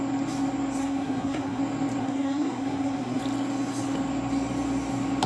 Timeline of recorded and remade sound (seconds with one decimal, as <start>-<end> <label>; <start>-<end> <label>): 0.0-0.8 recorded; 0.8-1.6 remade; 1.6-2.0 recorded; 2.0-3.2 remade; 3.2-5.3 recorded